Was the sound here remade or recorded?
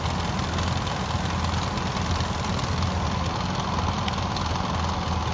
recorded